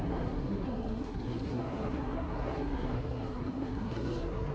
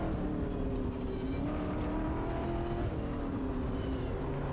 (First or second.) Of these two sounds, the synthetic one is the first